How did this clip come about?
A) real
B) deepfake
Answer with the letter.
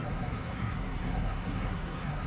B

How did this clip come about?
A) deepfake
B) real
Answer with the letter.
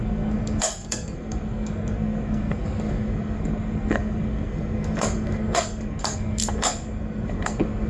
A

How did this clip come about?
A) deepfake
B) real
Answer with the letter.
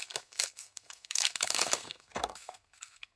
A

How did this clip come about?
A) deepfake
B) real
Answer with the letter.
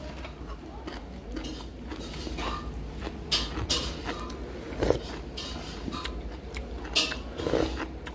B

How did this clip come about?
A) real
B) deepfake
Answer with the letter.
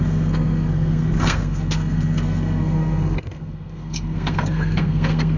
B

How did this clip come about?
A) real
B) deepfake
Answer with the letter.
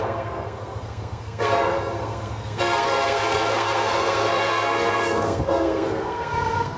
B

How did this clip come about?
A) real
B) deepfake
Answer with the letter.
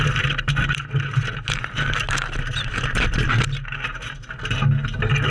A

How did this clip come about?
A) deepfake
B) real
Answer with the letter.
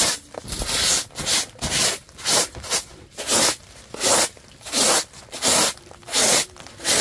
B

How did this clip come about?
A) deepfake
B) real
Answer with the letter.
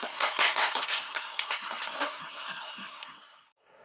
A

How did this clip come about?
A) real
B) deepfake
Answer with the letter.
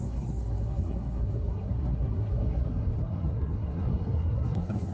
B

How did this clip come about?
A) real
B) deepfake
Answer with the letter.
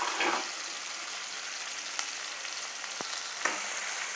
A